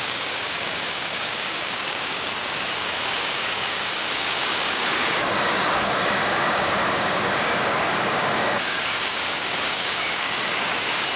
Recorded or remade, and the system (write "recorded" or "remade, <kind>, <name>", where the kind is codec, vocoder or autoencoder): remade, codec, DAC